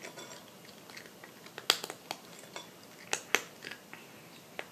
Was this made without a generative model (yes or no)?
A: yes